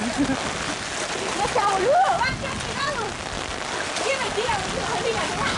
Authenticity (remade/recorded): recorded